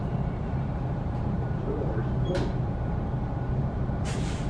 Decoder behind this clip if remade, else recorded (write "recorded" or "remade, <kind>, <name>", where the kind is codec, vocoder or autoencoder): remade, vocoder, BigVGAN v2